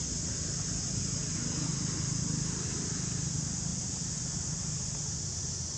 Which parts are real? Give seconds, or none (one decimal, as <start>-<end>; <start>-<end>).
0.0-5.8